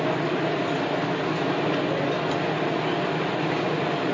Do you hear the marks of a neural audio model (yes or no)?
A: no